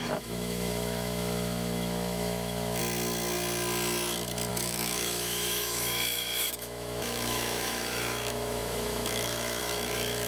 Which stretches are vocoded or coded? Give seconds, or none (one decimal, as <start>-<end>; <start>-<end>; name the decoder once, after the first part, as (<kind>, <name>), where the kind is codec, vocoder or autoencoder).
0.0-2.8 (autoencoder, DAC-VAE); 4.5-10.3